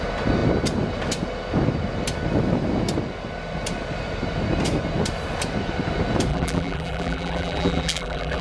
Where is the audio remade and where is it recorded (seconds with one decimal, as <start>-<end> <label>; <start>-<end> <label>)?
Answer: 0.0-6.3 recorded; 6.3-8.4 remade